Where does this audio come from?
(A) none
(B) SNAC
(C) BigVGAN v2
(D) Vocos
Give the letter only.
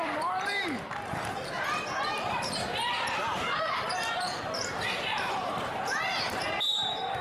C